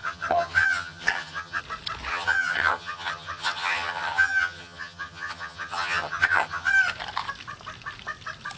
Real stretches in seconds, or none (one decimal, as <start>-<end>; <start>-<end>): 1.6-2.1; 6.7-8.6